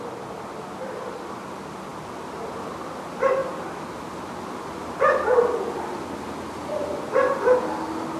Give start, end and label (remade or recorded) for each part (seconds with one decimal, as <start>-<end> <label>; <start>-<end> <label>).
0.0-8.2 recorded